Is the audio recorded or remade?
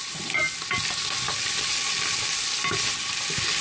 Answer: recorded